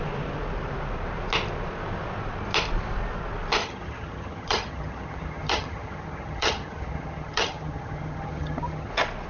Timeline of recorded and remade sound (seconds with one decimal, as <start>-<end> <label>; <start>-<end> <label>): 0.0-3.6 recorded; 3.6-8.9 remade; 8.9-9.3 recorded